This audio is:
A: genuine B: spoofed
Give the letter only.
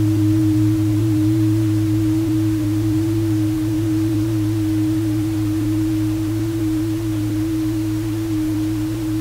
B